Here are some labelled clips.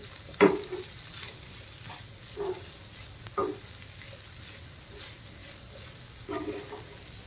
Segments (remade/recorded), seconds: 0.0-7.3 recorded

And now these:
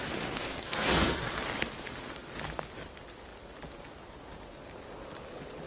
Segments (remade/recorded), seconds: 0.0-0.5 recorded; 0.5-1.3 remade; 1.3-5.7 recorded